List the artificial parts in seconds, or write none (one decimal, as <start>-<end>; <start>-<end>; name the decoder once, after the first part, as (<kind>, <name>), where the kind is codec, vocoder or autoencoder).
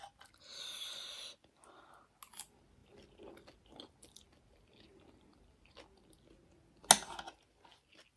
none